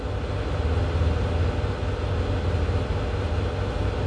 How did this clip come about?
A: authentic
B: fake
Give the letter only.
A